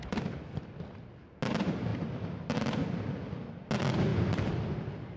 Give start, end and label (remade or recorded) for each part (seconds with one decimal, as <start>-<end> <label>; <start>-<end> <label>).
0.0-5.2 recorded